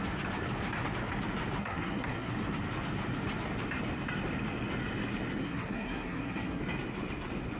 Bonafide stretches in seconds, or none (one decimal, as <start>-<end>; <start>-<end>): 0.0-1.6; 2.3-5.4; 6.6-7.6